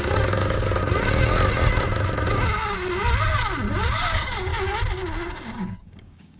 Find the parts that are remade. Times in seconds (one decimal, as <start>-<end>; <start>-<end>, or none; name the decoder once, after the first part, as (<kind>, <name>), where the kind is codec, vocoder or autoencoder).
0.0-0.8 (codec, DAC); 4.1-4.5; 5.3-6.4